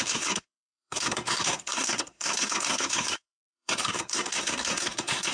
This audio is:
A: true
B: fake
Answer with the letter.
B